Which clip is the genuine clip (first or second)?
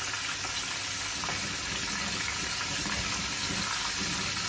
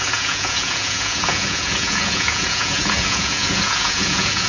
first